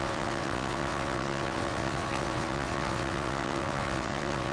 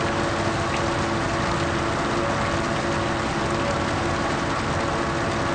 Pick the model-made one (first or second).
first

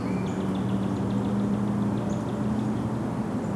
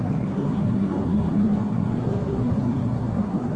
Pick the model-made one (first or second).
second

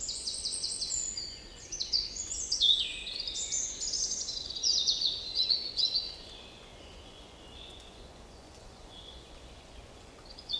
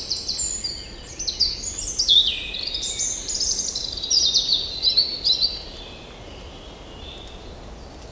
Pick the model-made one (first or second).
first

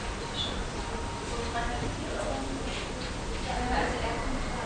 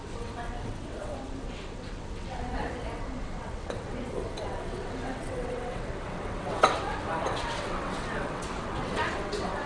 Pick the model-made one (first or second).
second